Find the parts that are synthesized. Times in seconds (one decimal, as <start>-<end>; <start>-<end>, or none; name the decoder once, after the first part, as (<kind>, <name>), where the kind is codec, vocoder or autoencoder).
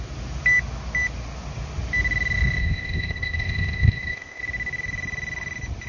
2.6-4.4 (codec, ZipCodec)